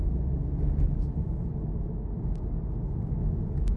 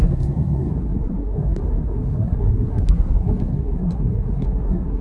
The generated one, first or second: second